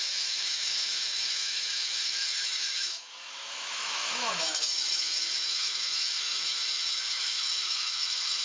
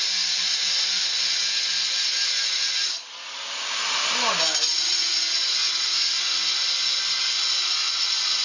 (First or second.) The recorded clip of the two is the second